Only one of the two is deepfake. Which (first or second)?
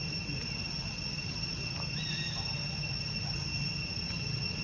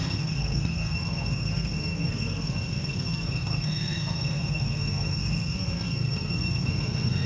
second